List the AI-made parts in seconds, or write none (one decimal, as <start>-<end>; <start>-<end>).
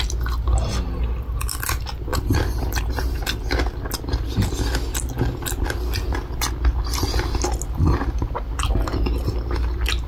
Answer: 2.1-3.2